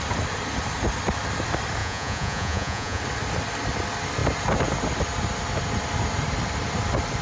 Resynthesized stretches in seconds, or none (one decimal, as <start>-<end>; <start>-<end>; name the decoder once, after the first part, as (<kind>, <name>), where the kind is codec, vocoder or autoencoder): 1.8-3.0 (vocoder, Vocos)